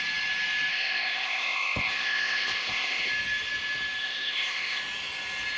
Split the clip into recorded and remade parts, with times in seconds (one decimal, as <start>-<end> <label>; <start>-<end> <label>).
0.0-0.7 recorded; 0.7-3.1 remade; 3.1-4.0 recorded; 4.0-4.8 remade; 4.8-5.6 recorded